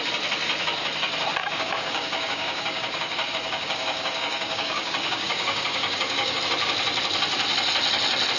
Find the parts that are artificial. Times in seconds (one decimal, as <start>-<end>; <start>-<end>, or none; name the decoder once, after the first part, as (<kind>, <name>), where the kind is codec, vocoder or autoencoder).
1.4-6.4 (codec, DAC)